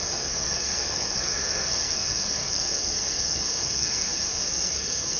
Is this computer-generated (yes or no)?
yes